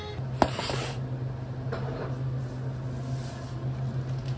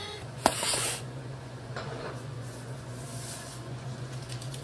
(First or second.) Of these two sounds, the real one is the first